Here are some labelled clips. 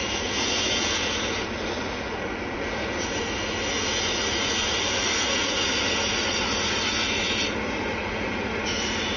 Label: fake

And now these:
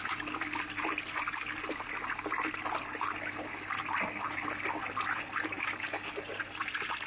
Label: real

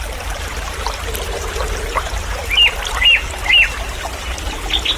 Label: real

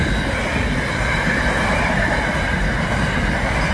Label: real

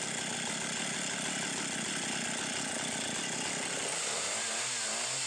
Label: real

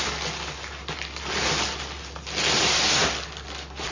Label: real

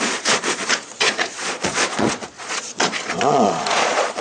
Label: fake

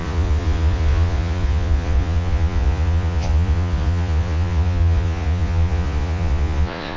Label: fake